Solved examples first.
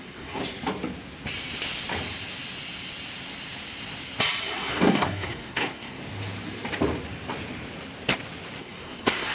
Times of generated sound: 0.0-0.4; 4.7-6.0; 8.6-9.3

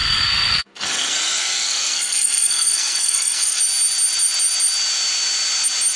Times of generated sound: 0.0-3.6

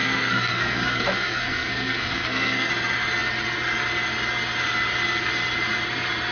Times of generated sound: 0.0-2.7

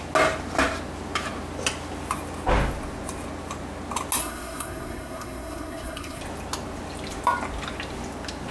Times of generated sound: 4.2-6.2

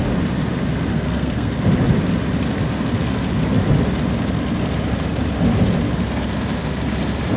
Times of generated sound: 0.9-1.5